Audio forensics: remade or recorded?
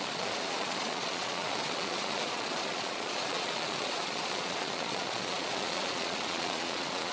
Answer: remade